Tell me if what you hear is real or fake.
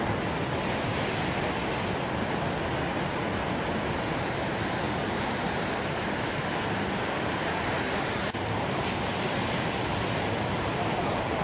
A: real